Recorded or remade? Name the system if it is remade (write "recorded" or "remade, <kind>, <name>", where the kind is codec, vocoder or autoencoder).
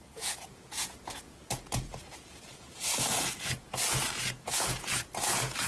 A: remade, vocoder, Vocos